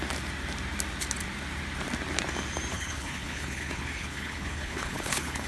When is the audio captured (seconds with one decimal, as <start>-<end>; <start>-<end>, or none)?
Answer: 0.0-2.7